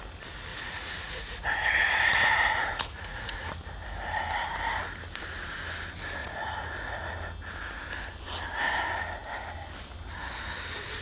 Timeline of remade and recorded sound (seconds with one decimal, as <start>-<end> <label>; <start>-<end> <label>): 0.0-0.5 recorded; 0.5-3.5 remade; 3.5-6.2 recorded; 6.2-7.1 remade; 7.1-11.0 recorded